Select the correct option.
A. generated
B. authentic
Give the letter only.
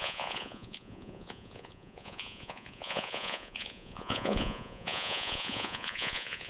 A